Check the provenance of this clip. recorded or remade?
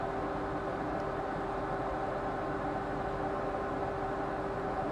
recorded